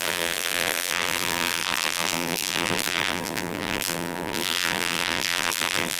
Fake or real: fake